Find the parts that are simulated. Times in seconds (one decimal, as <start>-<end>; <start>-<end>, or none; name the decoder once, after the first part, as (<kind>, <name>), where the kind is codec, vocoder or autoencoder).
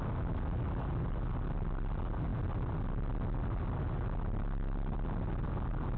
none